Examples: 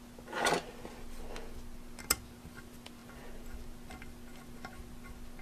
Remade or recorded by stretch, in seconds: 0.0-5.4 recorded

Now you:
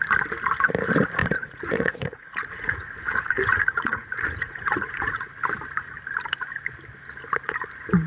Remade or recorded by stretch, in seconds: 0.0-1.2 recorded; 1.2-5.5 remade; 5.5-8.1 recorded

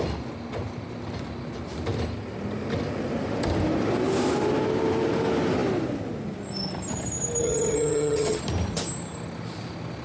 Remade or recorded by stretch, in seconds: 0.0-7.4 recorded; 7.4-8.4 remade; 8.4-10.0 recorded

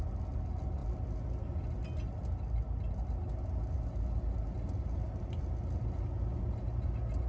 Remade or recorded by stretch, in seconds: 0.0-7.3 recorded

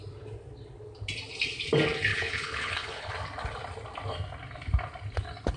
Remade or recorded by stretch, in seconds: 0.0-2.1 recorded; 2.1-3.1 remade; 3.1-5.6 recorded

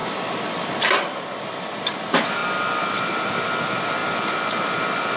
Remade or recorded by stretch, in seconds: 0.0-5.2 recorded

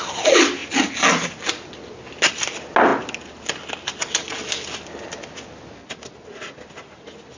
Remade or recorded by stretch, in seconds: 0.0-7.4 recorded

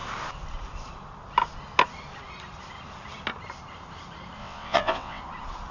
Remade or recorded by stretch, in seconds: 0.0-4.4 recorded; 4.4-5.2 remade; 5.2-5.7 recorded